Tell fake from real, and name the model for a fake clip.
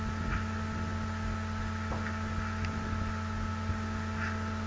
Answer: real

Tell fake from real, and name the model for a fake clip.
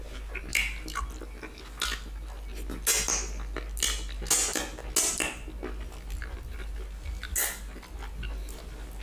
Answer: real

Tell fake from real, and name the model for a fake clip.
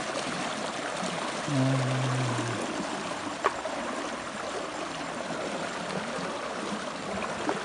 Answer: real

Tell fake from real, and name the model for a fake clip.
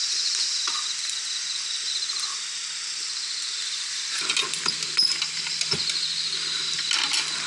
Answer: real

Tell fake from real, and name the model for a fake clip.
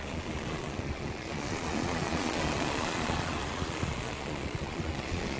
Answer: fake, vocoder, Vocos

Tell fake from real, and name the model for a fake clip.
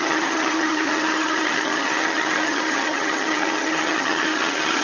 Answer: fake, vocoder, HiFi-GAN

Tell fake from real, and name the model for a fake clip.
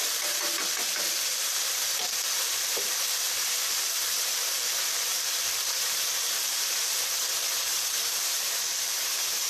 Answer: fake, vocoder, BigVGAN v2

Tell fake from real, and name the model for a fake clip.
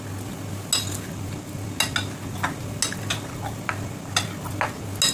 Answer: real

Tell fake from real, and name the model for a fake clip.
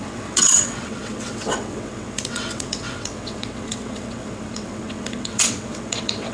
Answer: fake, vocoder, WaveNeXt